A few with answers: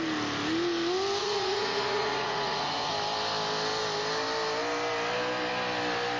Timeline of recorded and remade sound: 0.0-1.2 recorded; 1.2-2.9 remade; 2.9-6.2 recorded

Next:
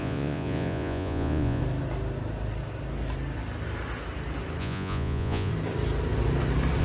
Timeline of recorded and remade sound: 0.0-1.6 remade; 1.6-4.6 recorded; 4.6-5.5 remade; 5.5-6.8 recorded

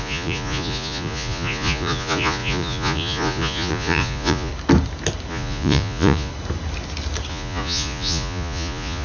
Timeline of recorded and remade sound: 0.0-4.5 remade; 4.5-5.3 recorded; 5.3-6.3 remade; 6.3-7.3 recorded; 7.3-9.0 remade

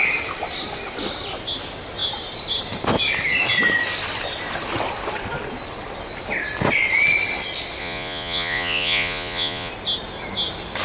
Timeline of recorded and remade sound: 0.0-7.8 recorded; 7.8-9.7 remade; 9.7-10.8 recorded

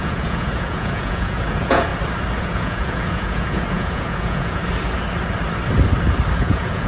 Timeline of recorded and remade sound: 0.0-1.9 remade; 1.9-2.4 recorded; 2.4-4.6 remade; 4.6-6.4 recorded; 6.4-6.9 remade

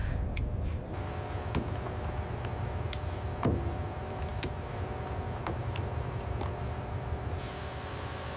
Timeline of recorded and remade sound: 0.0-8.4 recorded